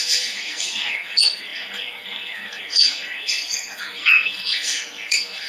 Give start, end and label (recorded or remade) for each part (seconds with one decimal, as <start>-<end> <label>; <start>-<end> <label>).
0.0-5.5 remade